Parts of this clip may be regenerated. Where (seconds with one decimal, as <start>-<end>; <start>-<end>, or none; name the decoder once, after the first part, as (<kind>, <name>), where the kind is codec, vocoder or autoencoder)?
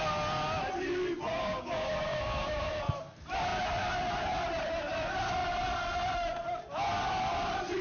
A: 1.3-2.7 (codec, DAC)